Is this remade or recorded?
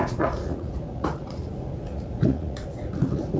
remade